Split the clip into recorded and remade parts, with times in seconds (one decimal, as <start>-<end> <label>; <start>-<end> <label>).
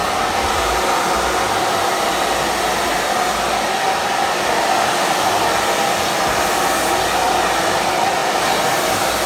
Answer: 0.0-9.3 recorded